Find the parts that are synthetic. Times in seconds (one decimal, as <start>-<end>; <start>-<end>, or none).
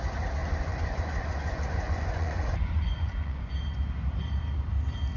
0.4-3.5